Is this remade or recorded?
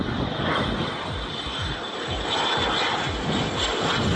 recorded